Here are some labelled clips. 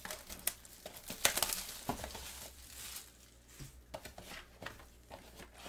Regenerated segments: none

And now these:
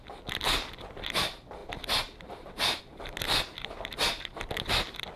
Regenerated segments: none

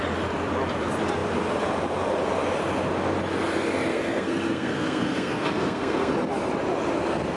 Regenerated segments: 3.9-6.1

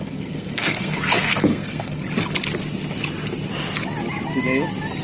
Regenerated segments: 0.0-2.0

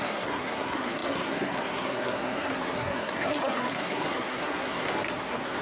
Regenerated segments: 0.0-5.6

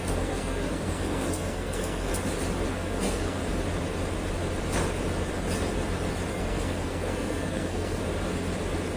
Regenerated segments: 0.0-2.1; 2.7-3.4; 6.3-8.0